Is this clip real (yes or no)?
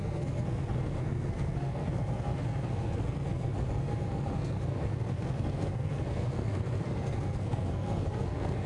no